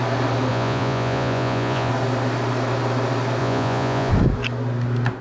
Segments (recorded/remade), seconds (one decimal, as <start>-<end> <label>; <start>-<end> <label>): 0.0-0.5 recorded; 0.5-1.9 remade; 1.9-3.4 recorded; 3.4-4.1 remade; 4.1-5.2 recorded